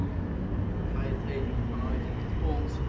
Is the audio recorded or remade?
recorded